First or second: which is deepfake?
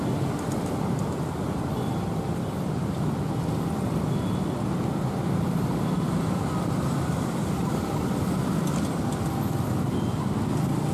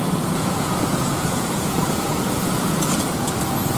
second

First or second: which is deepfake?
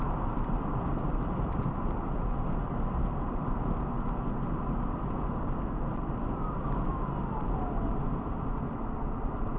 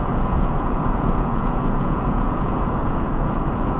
second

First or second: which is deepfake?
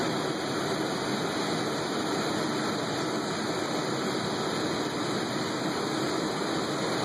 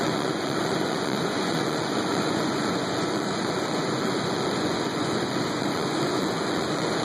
second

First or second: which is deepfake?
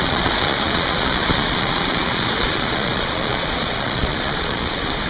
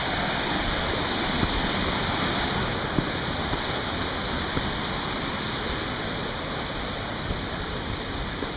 first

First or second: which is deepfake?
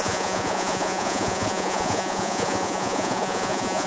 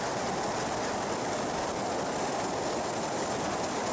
first